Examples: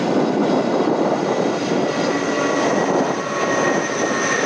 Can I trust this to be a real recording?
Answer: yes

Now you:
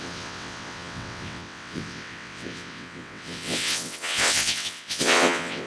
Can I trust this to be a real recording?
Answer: no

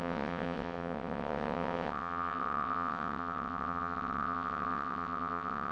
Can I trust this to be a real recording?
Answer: no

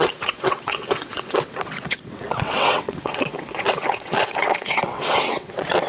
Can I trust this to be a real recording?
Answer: no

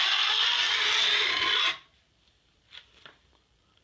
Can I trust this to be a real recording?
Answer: yes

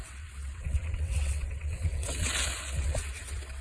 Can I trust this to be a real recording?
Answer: no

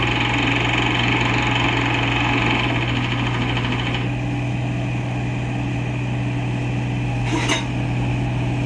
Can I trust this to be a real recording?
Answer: yes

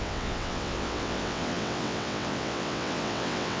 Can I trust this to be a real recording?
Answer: no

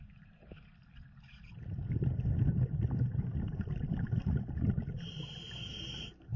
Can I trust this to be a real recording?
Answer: yes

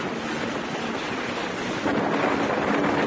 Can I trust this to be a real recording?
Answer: yes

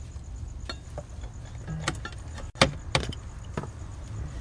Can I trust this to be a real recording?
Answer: yes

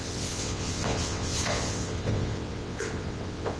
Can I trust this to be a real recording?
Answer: no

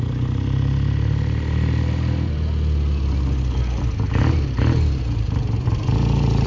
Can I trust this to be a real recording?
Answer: yes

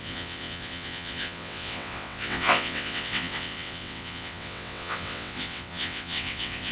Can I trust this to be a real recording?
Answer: no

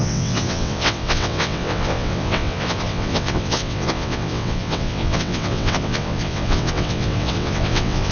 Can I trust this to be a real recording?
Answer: no